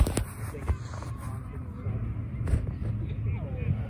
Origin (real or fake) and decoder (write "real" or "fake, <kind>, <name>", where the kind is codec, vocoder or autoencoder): real